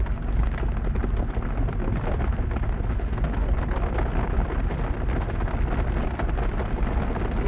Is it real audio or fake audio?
real